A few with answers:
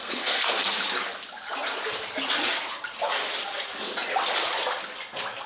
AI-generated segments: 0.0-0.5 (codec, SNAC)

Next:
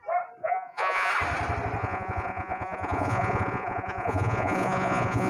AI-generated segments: 0.4-1.1 (vocoder, Vocos); 1.8-5.3